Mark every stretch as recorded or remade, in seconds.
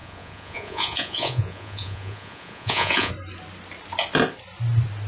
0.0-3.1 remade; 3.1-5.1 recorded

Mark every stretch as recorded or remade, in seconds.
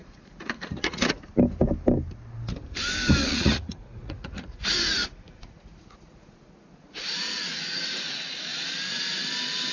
0.0-1.2 remade; 1.2-3.2 recorded; 3.2-8.4 remade; 8.4-9.7 recorded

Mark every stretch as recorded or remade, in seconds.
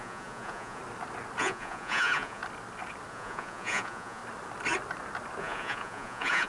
0.0-0.8 remade; 0.8-1.4 recorded; 1.4-2.4 remade; 2.4-3.1 recorded; 3.1-4.2 remade; 4.2-5.4 recorded; 5.4-6.5 remade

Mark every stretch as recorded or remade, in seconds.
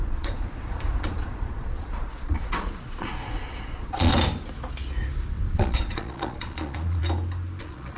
0.0-4.1 remade; 4.1-5.5 recorded; 5.5-7.0 remade; 7.0-7.6 recorded; 7.6-8.0 remade